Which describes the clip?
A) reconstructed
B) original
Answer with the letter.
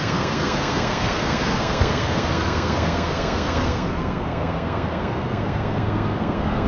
A